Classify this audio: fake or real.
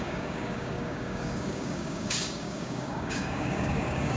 fake